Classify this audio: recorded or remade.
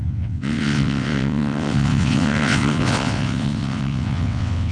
remade